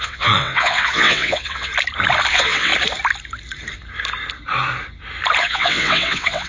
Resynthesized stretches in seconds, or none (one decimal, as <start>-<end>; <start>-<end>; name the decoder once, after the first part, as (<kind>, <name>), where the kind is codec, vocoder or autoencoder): 0.0-1.7 (vocoder, WaveNeXt); 2.3-2.7; 5.4-6.5